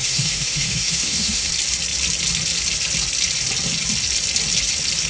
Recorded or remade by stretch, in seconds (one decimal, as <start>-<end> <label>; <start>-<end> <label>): 0.0-1.5 remade; 1.5-5.1 recorded